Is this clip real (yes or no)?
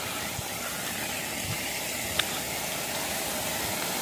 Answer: yes